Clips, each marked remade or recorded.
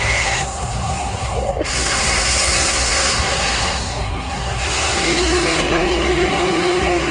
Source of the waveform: remade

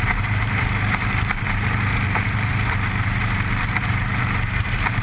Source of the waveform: remade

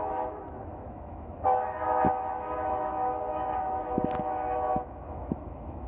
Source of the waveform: remade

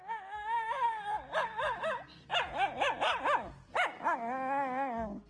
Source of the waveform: recorded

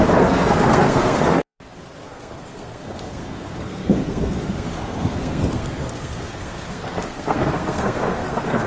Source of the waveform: remade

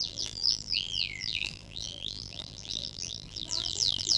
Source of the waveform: remade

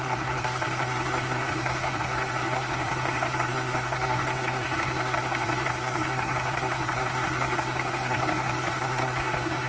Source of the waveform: remade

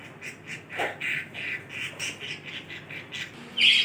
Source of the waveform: recorded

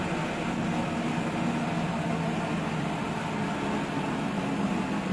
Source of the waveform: recorded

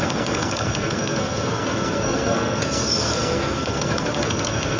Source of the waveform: remade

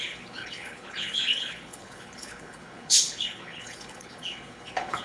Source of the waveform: remade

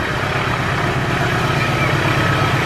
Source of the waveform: recorded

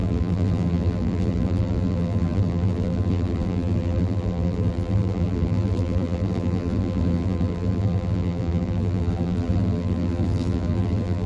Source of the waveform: remade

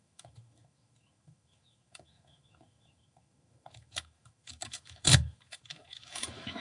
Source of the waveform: remade